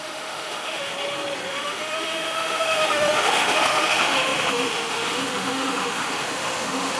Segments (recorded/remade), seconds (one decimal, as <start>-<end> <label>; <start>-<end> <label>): 0.0-0.9 remade; 0.9-1.5 recorded; 1.5-7.0 remade